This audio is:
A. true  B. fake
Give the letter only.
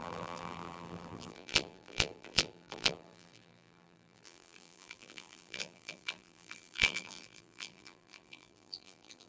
B